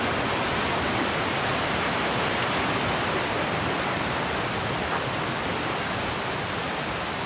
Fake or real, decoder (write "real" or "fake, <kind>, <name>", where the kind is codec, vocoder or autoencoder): real